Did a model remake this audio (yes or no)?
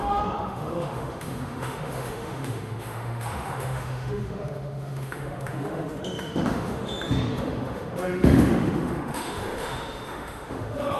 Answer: yes